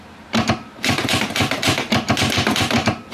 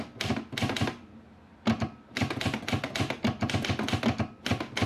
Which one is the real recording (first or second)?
second